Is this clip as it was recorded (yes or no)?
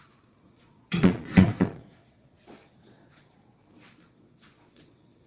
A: no